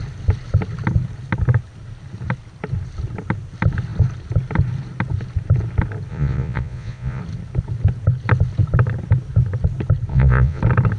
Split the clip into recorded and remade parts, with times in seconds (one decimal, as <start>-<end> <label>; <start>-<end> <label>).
0.0-6.1 recorded; 6.1-7.2 remade; 7.2-10.1 recorded; 10.1-10.6 remade; 10.6-11.0 recorded